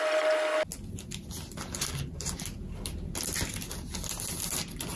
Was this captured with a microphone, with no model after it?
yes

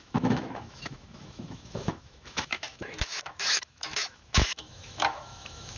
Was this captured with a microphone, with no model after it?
no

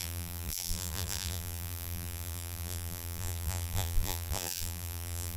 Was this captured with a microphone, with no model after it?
no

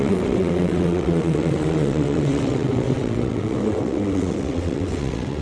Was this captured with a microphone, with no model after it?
no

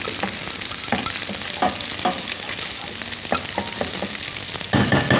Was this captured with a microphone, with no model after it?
yes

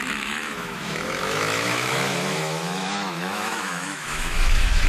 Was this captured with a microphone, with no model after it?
no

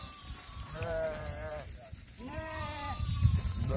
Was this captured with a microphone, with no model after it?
no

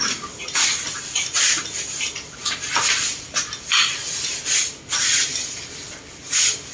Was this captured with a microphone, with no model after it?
yes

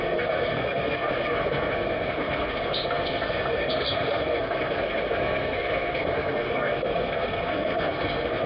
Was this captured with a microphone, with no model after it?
no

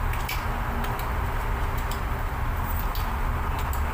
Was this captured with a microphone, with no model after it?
yes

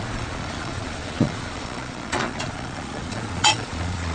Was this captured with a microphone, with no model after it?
no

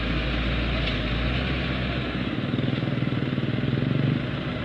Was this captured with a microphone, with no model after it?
yes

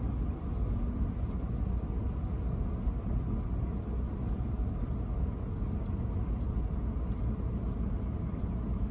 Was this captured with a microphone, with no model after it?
yes